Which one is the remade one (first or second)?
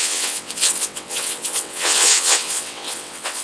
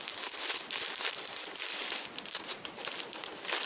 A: first